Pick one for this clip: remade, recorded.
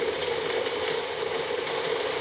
remade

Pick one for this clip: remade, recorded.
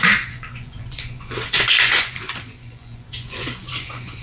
remade